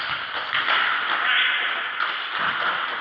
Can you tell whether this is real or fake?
real